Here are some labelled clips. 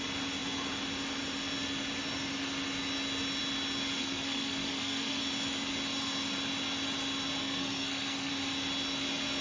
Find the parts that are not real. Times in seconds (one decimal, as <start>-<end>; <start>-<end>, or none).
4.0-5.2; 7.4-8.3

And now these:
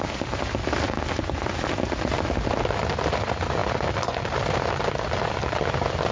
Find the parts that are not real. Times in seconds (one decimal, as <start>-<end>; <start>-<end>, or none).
none

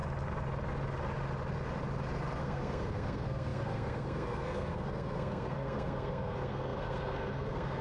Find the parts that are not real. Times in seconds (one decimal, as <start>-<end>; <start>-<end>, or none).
2.4-7.8